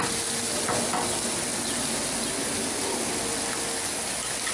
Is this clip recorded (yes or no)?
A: yes